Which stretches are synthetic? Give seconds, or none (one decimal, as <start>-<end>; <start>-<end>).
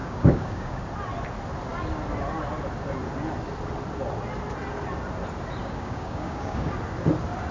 0.0-0.8; 5.6-6.7